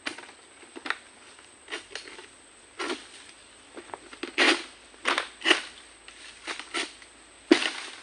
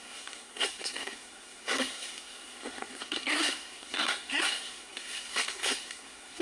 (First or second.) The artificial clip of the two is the second